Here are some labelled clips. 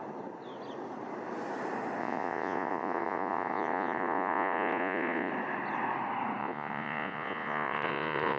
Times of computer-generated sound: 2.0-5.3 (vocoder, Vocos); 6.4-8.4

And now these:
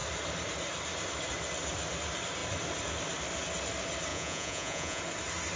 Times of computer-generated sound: 4.1-5.0 (vocoder, Vocos)

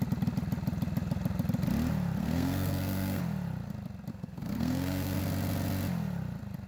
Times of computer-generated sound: 2.2-3.2 (codec, SNAC); 4.1-5.2